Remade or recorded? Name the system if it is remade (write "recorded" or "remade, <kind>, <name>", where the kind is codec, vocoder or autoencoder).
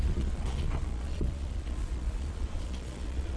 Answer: remade, vocoder, Vocos